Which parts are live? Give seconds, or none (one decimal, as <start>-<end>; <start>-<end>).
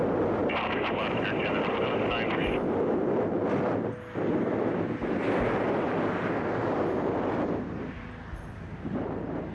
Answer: 0.0-9.5